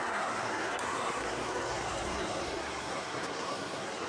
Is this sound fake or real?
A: fake